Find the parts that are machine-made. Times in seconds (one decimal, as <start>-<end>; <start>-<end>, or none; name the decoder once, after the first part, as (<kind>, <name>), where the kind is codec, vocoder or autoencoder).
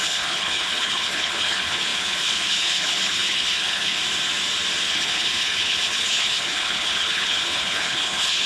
0.0-4.0 (codec, HILCodec); 4.8-8.5